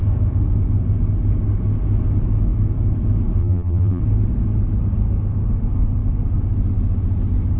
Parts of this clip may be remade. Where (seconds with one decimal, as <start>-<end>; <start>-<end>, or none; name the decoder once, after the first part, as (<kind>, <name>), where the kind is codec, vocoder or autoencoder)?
3.4-4.0 (vocoder, BigVGAN v2)